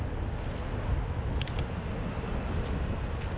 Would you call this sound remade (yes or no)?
no